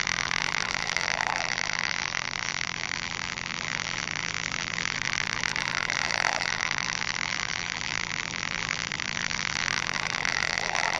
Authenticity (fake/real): fake